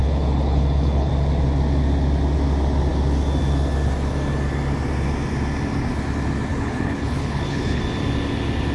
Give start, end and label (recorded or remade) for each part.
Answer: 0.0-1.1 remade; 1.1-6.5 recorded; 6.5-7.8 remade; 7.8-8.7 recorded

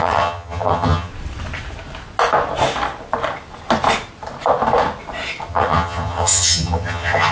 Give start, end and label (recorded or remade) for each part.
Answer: 0.0-1.1 remade; 1.1-5.5 recorded; 5.5-7.3 remade

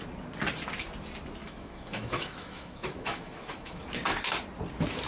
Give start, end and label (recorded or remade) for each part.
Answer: 0.0-1.4 recorded; 1.4-3.8 remade; 3.8-5.1 recorded